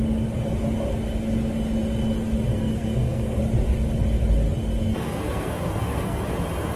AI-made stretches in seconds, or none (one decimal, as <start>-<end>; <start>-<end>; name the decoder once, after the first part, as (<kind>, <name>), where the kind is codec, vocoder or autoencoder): 2.5-3.4 (codec, SNAC); 4.9-6.2